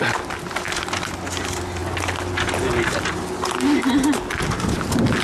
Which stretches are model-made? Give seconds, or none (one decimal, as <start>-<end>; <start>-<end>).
none